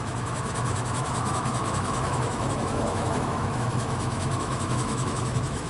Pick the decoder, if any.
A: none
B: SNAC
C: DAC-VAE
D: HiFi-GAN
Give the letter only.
C